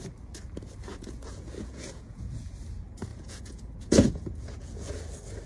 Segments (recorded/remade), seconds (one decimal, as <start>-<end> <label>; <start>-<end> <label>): 0.0-0.9 recorded; 0.9-2.5 remade; 2.5-3.1 recorded; 3.1-5.0 remade; 5.0-5.5 recorded